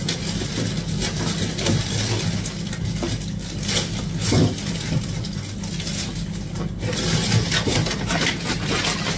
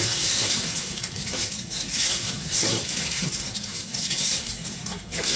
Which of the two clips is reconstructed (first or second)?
second